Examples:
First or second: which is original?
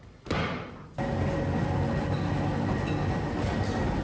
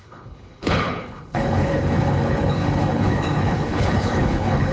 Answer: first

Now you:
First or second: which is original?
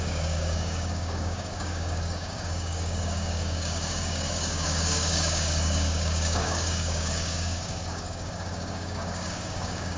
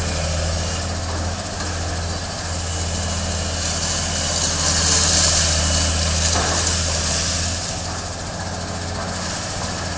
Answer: second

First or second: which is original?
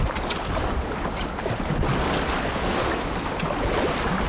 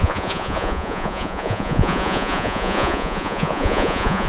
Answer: first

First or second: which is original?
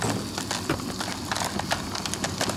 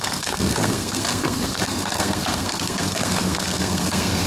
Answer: first